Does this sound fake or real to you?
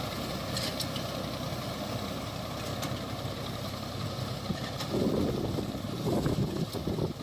fake